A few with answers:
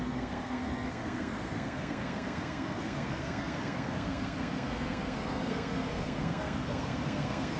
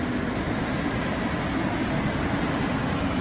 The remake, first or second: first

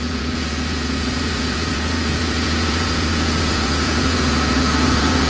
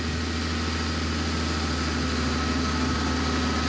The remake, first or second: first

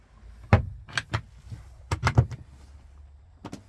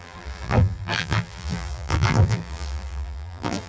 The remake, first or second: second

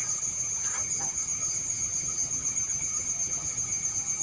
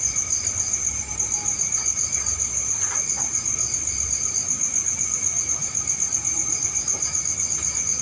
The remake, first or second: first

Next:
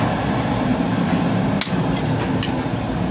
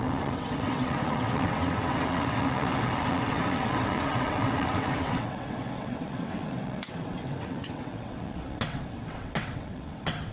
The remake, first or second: second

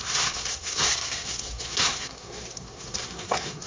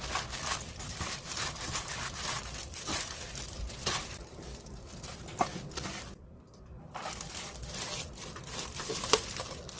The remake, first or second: first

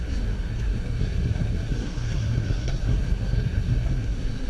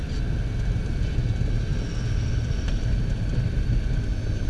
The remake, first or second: first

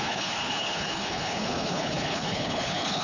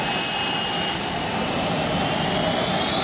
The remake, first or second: first